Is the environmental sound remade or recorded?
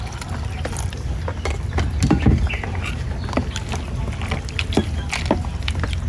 recorded